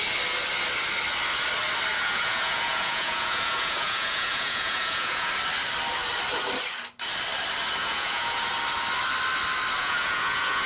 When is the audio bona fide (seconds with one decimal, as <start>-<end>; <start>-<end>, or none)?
0.0-1.9; 5.3-7.8; 8.5-9.8